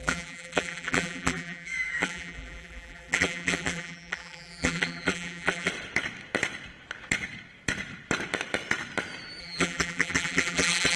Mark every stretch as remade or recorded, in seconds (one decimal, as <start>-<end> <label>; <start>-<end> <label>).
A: 0.0-5.7 remade; 5.7-9.4 recorded; 9.4-11.0 remade